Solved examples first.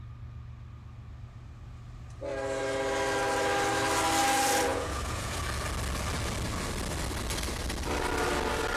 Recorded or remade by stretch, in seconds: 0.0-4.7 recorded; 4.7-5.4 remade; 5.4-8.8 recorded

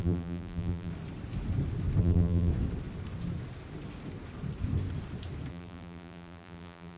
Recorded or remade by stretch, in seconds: 0.0-0.9 remade; 0.9-2.0 recorded; 2.0-2.5 remade; 2.5-5.5 recorded; 5.5-7.0 remade

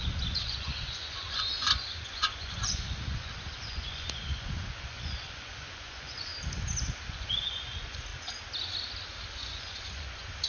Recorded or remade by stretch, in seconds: 0.0-6.3 remade; 6.3-7.1 recorded; 7.1-8.1 remade; 8.1-9.3 recorded; 9.3-10.5 remade

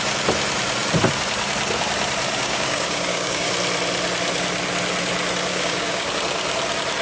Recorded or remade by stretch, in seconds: 0.0-2.4 recorded; 2.4-3.5 remade; 3.5-5.5 recorded; 5.5-6.1 remade; 6.1-7.0 recorded

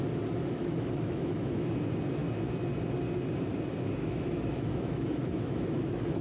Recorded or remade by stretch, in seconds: 0.0-0.5 recorded; 0.5-1.7 remade; 1.7-4.0 recorded; 4.0-6.2 remade

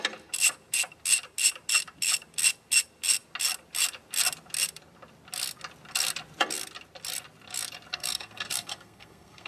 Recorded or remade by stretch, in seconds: 0.0-7.9 recorded; 7.9-9.5 remade